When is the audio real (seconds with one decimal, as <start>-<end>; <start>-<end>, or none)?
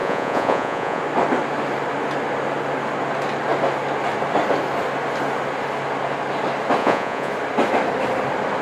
1.0-6.8; 7.3-8.6